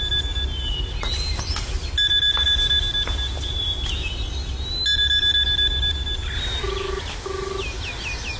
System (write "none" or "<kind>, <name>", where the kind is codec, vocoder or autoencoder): none